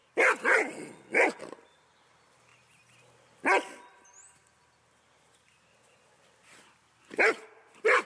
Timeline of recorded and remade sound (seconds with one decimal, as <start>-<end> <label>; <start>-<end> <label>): 0.0-8.0 recorded